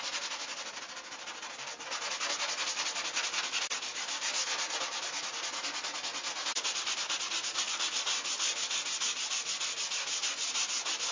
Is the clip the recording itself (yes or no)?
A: yes